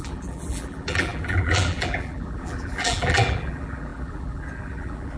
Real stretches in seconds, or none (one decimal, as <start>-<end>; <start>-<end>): none